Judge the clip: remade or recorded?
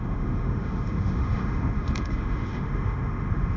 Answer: remade